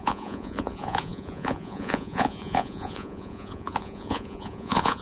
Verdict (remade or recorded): remade